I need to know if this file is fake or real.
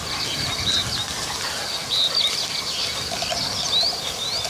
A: real